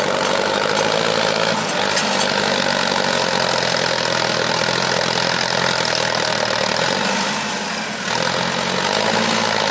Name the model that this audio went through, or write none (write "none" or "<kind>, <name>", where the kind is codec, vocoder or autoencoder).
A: none